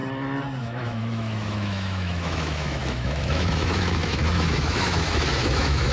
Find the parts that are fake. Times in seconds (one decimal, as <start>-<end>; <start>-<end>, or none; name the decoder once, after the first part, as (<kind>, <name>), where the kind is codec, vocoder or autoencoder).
0.6-5.9 (autoencoder, DAC-VAE)